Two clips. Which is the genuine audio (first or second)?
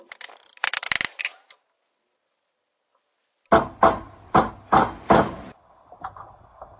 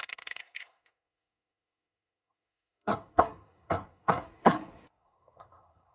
first